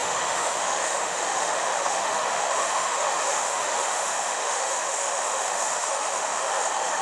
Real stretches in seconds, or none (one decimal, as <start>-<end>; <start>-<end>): none